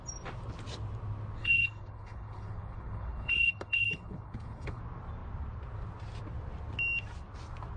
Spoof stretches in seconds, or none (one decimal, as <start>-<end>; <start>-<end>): 1.4-4.8